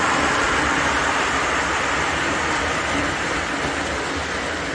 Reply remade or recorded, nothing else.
recorded